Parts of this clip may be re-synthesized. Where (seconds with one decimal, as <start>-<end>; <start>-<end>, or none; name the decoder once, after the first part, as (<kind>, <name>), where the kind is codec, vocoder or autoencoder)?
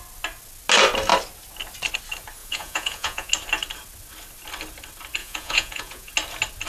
2.4-3.3 (vocoder, Vocos); 5.2-6.1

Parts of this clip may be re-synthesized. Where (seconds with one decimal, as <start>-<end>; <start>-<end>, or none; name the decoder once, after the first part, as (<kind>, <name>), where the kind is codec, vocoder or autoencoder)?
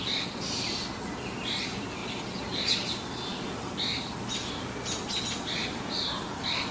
none